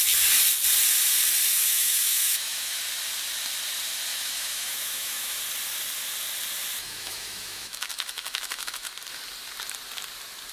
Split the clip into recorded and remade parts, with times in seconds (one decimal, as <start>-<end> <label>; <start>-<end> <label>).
0.0-1.5 recorded; 1.5-2.8 remade; 2.8-4.1 recorded; 4.1-5.4 remade; 5.4-6.8 recorded; 6.8-8.9 remade; 8.9-10.5 recorded